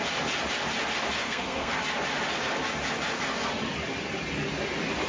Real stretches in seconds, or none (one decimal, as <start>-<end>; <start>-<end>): 0.0-1.2; 1.7-5.1